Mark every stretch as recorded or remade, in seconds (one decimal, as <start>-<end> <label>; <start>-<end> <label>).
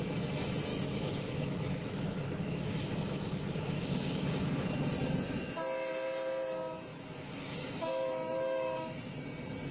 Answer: 0.0-0.7 recorded; 0.7-4.3 remade; 4.3-6.9 recorded; 6.9-9.0 remade; 9.0-9.7 recorded